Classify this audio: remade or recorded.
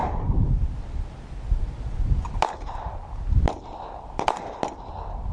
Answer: recorded